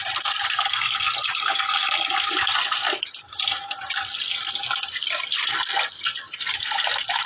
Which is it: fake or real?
real